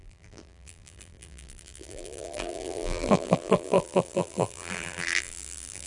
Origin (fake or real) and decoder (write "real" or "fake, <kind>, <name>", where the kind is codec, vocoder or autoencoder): fake, vocoder, BigVGAN v2